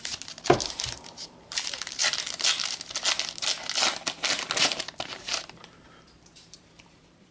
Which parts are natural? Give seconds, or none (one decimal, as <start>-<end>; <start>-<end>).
2.0-4.6